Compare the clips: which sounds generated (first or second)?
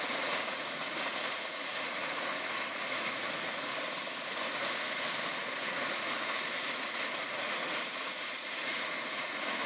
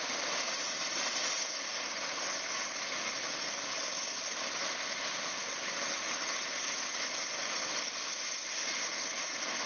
first